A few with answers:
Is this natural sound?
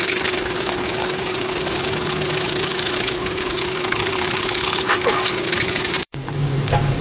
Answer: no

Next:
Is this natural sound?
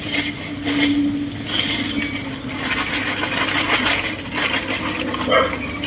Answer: yes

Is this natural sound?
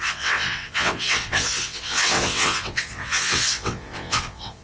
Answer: no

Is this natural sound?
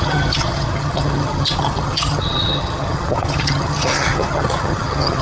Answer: no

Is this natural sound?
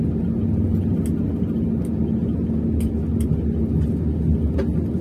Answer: yes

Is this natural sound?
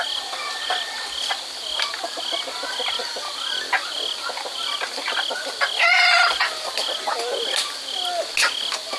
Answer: yes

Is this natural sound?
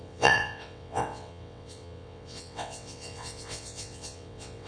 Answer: no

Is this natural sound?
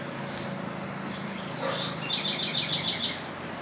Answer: yes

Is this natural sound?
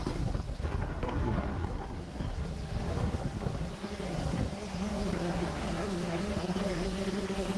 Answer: no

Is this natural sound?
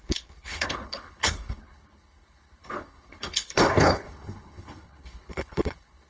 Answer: no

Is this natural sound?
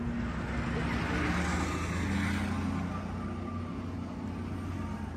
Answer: yes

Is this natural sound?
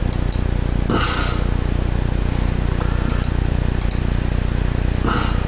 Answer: yes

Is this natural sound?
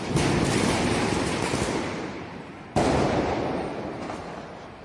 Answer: no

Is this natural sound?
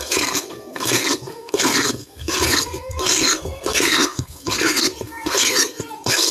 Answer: no